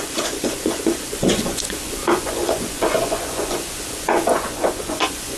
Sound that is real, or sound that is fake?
fake